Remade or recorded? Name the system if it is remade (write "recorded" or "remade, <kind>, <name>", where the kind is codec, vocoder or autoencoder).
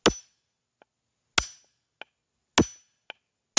recorded